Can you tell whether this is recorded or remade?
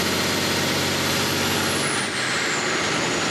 recorded